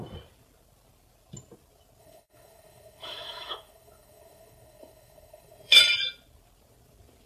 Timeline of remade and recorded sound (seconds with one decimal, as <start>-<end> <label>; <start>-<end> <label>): 0.0-2.0 recorded; 2.0-5.8 remade; 5.8-7.3 recorded